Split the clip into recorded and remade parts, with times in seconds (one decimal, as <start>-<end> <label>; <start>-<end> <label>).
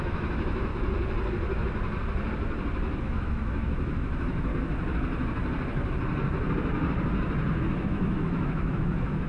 0.0-0.7 remade; 0.7-3.0 recorded; 3.0-4.5 remade; 4.5-7.8 recorded; 7.8-9.3 remade